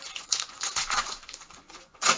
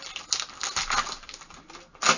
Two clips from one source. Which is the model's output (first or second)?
first